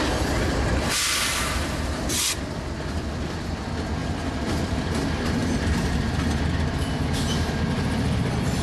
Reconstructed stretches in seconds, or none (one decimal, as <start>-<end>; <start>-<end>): 4.0-4.8; 5.4-6.0